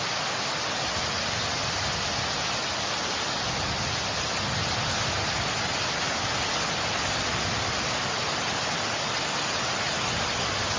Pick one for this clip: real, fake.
real